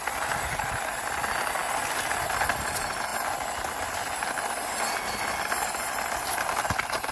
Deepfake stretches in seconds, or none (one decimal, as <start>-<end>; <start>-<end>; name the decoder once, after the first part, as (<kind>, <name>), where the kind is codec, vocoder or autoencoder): none